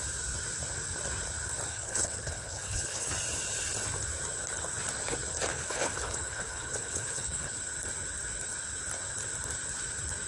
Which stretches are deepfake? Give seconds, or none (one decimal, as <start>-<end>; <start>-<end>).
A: 1.7-3.1; 5.5-7.6